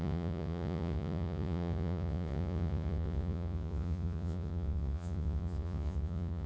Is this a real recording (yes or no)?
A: no